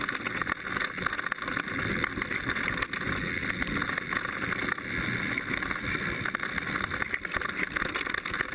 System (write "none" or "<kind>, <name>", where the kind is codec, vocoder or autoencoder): none